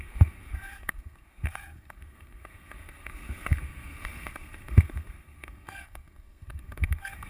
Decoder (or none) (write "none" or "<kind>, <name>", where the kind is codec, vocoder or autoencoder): codec, SNAC